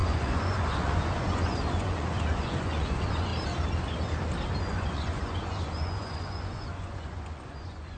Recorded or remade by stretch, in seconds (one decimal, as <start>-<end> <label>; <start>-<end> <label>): 0.0-3.3 remade; 3.3-4.6 recorded; 4.6-8.0 remade